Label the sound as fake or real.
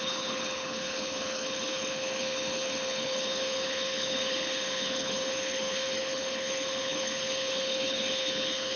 fake